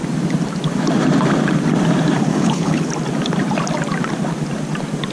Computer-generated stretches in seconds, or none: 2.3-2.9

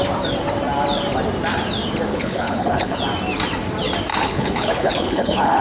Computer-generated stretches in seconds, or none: 2.1-3.0; 4.1-5.6

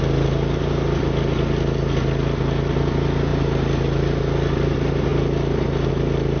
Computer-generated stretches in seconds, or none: none

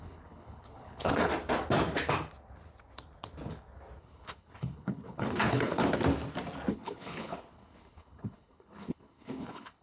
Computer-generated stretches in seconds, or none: 0.0-1.3; 4.0-5.8; 6.7-9.8

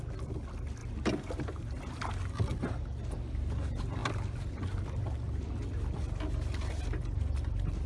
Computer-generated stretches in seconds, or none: none

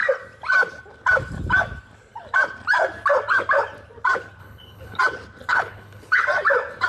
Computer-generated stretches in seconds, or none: 4.4-5.0; 5.5-6.2

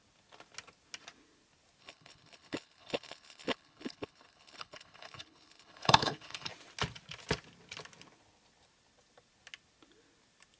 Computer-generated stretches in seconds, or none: 1.8-6.5